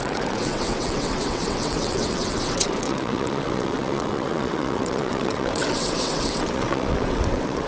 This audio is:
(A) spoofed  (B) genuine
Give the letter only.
A